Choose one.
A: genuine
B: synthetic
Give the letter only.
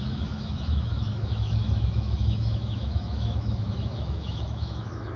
B